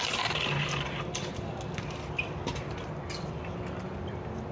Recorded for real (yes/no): yes